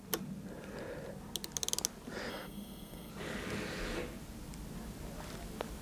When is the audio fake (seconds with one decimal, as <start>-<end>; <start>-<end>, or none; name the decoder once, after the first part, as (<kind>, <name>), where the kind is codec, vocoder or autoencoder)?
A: 2.3-3.1 (codec, SNAC)